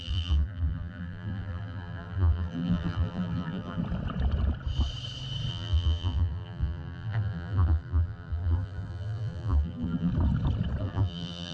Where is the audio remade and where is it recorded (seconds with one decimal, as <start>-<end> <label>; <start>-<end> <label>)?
0.0-3.8 remade; 3.8-5.5 recorded; 5.5-10.1 remade; 10.1-10.8 recorded; 10.8-11.5 remade